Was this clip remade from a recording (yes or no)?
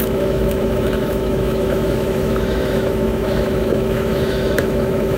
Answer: yes